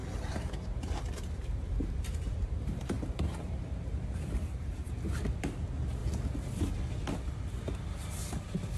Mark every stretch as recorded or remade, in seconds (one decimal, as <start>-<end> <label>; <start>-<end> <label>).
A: 0.0-5.1 remade; 5.1-8.8 recorded